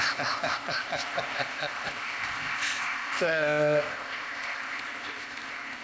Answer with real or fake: fake